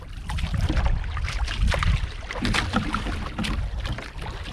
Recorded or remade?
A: recorded